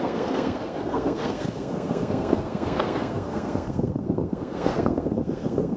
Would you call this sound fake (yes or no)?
yes